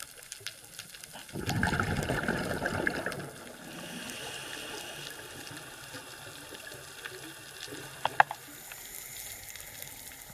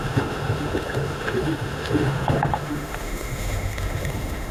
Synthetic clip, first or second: second